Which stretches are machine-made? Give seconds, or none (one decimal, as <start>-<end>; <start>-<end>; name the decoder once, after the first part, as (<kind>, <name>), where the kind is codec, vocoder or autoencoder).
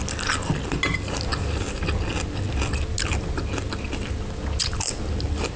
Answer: none